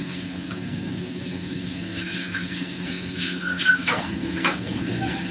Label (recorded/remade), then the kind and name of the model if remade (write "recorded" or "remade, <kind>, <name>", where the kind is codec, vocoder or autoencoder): remade, codec, SNAC